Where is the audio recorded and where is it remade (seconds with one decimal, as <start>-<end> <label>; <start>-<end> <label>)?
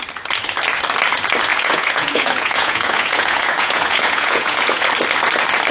0.0-1.5 recorded; 1.5-4.9 remade; 4.9-5.7 recorded